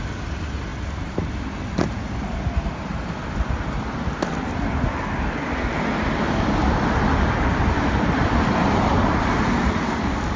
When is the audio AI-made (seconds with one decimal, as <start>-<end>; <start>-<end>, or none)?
none